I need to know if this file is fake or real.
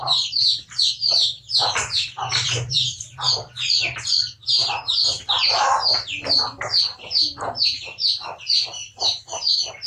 fake